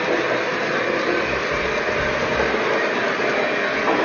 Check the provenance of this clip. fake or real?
real